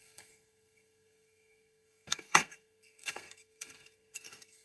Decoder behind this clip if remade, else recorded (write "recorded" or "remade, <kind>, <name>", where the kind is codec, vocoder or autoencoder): remade, codec, SNAC